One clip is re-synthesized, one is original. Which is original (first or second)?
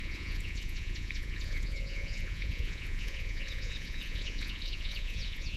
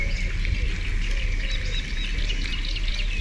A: second